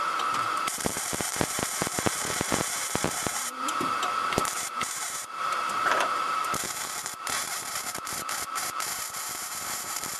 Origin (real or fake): fake